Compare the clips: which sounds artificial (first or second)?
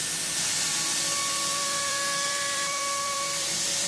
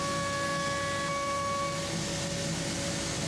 first